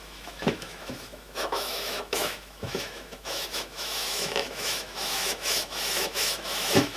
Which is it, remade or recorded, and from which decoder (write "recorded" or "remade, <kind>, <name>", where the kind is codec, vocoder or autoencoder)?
remade, autoencoder, DAC-VAE